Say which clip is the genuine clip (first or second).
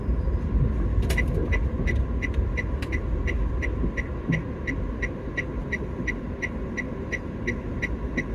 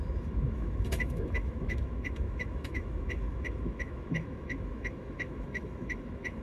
first